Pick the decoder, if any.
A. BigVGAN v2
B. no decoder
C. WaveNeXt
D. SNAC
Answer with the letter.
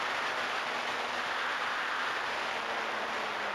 B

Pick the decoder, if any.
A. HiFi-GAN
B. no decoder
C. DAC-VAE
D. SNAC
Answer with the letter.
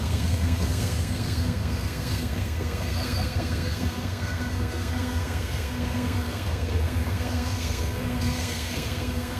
D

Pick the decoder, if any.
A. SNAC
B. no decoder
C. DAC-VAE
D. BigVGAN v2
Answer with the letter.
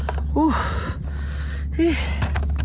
B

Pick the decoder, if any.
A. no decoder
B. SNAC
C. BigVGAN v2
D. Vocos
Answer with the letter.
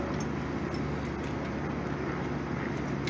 A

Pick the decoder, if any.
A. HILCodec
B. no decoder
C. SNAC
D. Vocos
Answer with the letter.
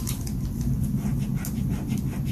B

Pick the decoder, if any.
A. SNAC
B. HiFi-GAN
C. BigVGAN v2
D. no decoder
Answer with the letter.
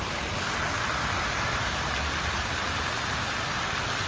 D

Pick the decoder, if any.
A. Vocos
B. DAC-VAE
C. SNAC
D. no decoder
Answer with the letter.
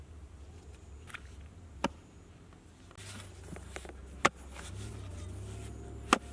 D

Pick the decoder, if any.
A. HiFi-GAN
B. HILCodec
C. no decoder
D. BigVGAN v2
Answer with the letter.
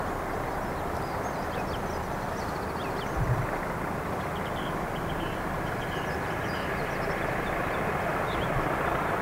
C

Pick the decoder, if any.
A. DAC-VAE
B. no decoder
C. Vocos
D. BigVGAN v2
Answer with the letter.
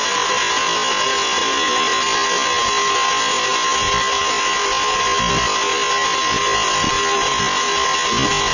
B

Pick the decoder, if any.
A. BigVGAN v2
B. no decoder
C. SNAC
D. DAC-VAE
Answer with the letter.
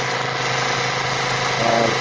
B